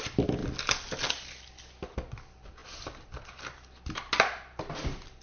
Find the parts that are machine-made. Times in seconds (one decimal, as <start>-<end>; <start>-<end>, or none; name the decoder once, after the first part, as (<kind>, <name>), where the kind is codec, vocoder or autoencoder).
0.4-1.1 (vocoder, BigVGAN v2); 2.6-3.3